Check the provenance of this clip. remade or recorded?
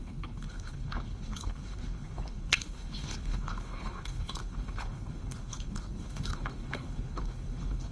remade